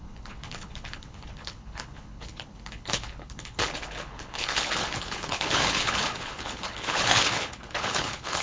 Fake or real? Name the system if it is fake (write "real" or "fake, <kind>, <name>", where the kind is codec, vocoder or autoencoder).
fake, codec, HILCodec